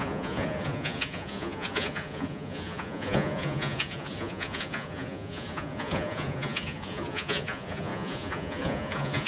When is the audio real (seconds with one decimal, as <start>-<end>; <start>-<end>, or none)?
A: none